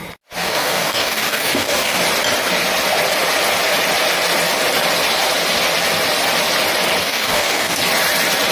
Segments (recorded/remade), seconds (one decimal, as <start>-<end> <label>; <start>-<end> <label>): 0.0-0.4 recorded; 0.4-2.0 remade; 2.0-7.0 recorded; 7.0-7.8 remade; 7.8-8.5 recorded